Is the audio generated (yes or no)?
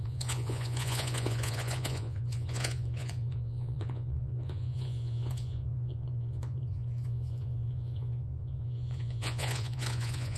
yes